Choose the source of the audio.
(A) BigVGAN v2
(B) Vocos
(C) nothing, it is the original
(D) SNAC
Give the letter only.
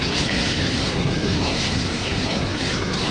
D